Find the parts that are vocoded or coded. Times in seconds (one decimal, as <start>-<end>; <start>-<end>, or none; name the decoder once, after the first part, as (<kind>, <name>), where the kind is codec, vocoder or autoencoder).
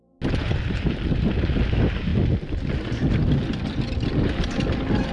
none